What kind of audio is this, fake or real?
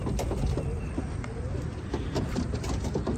fake